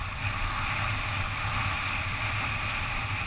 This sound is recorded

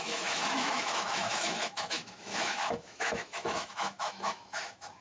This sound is remade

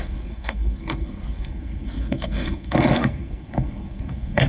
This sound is remade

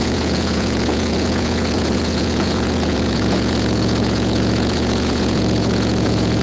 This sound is remade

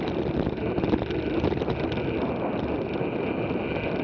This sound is recorded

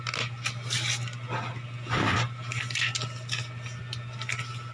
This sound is recorded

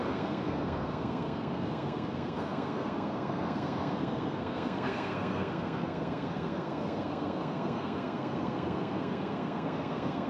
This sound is remade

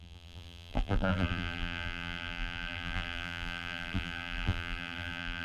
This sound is remade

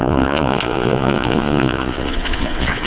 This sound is remade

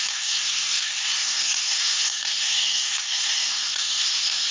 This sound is remade